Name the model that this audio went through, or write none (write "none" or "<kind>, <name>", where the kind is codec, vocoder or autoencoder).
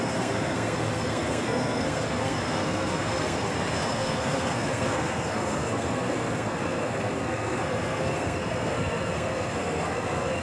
codec, SNAC